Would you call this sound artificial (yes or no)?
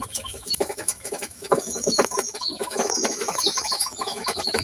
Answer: yes